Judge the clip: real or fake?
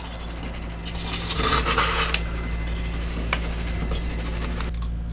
real